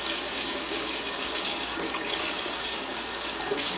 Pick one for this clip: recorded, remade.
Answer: remade